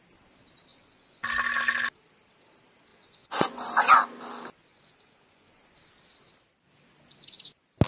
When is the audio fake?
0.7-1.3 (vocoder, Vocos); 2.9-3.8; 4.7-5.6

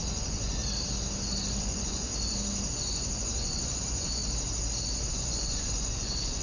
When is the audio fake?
0.0-0.6 (vocoder, Vocos); 1.6-2.1; 2.7-4.2; 5.1-6.4

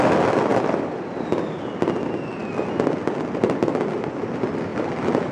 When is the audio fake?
0.5-1.3 (vocoder, BigVGAN v2); 4.7-5.3